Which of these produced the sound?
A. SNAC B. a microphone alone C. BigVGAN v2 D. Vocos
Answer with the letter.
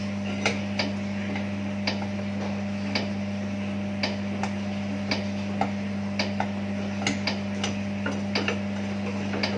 B